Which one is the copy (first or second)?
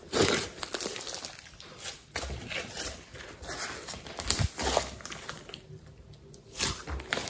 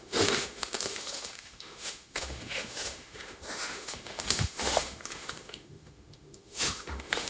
second